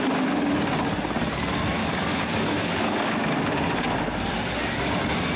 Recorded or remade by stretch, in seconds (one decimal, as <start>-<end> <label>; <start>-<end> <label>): 0.0-1.8 recorded; 1.8-5.0 remade; 5.0-5.4 recorded